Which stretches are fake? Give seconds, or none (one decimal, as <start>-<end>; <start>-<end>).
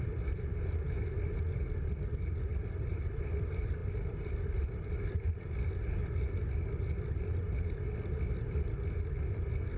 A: 2.5-3.3; 3.8-5.7